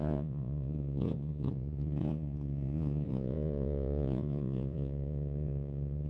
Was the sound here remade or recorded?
remade